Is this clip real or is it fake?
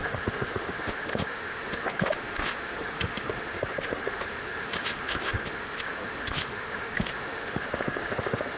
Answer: fake